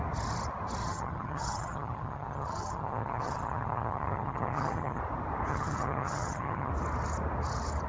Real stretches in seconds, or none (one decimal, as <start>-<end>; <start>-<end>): 0.0-0.8; 5.0-5.5; 6.7-7.9